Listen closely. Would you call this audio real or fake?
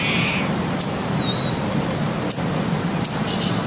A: real